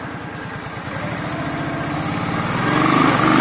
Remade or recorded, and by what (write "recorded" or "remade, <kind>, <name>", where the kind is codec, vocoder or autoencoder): recorded